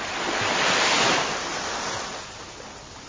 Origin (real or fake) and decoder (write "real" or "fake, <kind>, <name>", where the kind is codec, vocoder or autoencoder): real